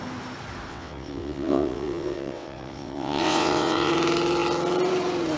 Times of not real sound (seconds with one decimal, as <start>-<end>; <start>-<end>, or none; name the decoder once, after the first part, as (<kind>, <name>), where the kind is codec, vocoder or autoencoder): 0.7-3.9 (vocoder, WaveNeXt)